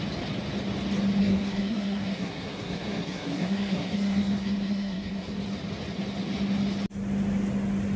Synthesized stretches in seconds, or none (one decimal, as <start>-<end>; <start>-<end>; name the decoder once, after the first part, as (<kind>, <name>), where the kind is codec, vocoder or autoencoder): 1.2-5.4 (codec, SNAC)